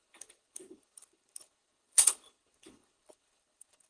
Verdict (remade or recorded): remade